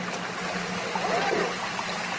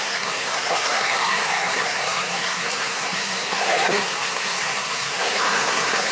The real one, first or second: first